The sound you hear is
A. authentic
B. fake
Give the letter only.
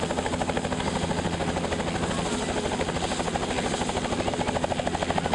A